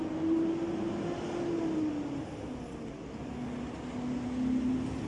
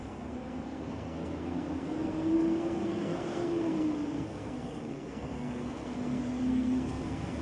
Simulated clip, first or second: second